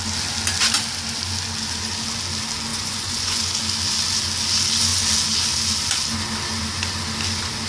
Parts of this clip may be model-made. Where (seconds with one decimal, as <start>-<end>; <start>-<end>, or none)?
2.7-3.5